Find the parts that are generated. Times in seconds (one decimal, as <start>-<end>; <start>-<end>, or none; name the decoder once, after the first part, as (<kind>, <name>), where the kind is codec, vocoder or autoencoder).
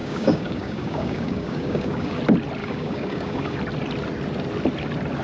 0.0-2.2 (codec, DAC); 2.6-3.6